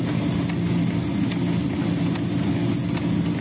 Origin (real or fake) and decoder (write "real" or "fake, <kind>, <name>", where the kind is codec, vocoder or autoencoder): real